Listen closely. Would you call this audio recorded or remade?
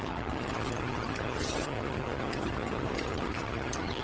remade